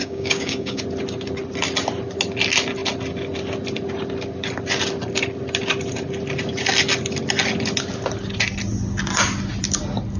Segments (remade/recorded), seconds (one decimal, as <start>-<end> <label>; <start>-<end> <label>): 0.0-0.8 remade; 0.8-10.2 recorded